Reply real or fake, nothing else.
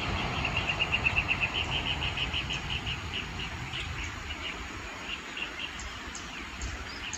fake